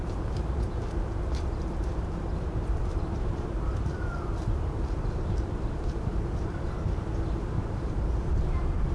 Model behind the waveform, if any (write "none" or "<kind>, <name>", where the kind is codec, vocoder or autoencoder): vocoder, BigVGAN v2